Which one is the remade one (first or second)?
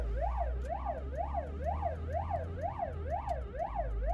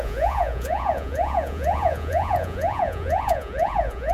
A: second